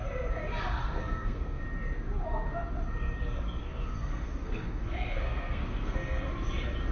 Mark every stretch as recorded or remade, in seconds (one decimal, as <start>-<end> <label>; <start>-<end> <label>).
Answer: 0.0-0.8 recorded; 0.8-1.6 remade; 1.6-3.6 recorded; 3.6-6.3 remade; 6.3-6.9 recorded